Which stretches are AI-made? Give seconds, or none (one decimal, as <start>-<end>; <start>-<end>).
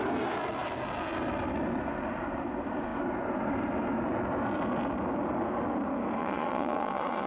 6.2-7.3